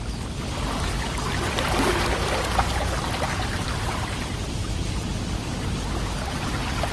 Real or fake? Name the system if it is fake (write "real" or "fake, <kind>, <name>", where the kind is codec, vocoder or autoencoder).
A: real